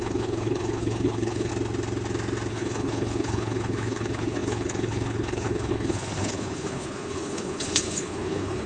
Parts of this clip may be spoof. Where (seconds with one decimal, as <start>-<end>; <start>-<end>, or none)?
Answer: 0.0-1.5; 2.5-8.7